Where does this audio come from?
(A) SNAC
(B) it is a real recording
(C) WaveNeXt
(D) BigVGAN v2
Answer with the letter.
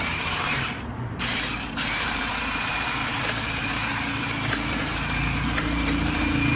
D